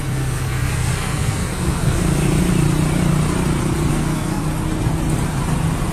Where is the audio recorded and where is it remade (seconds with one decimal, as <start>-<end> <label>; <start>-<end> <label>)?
0.0-2.0 remade; 2.0-3.9 recorded; 3.9-4.4 remade; 4.4-5.9 recorded